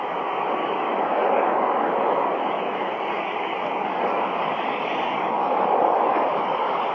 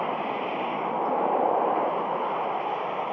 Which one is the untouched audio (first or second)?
second